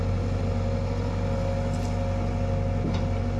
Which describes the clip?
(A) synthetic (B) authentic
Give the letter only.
B